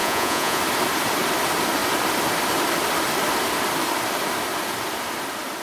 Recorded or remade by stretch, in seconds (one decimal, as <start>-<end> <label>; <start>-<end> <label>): 0.0-0.6 remade; 0.6-5.6 recorded